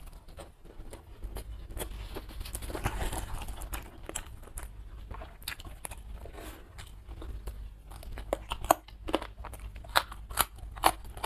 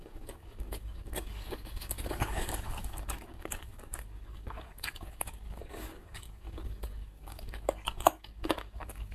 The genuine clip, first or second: first